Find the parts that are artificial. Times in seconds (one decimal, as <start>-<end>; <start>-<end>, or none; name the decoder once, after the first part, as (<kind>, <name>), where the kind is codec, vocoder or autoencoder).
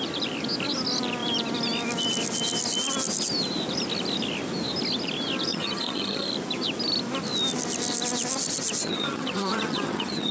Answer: 5.5-6.3 (vocoder, HiFi-GAN); 8.8-10.3